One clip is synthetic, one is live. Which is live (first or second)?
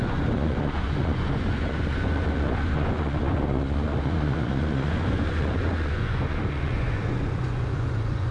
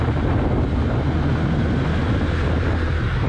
second